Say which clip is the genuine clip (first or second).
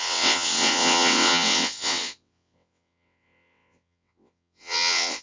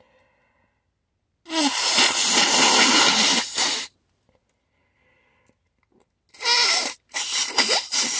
second